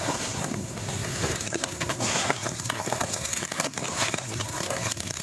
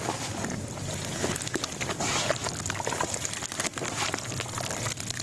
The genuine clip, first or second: second